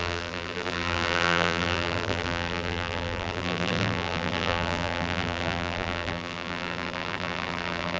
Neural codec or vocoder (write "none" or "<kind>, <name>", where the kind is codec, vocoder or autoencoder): vocoder, BigVGAN v2